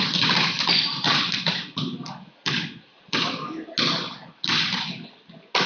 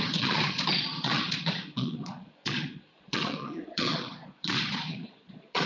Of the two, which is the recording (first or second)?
first